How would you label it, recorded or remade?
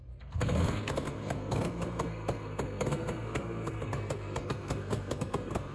remade